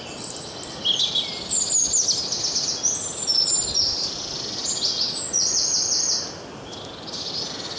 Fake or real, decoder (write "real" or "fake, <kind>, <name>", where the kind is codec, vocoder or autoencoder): real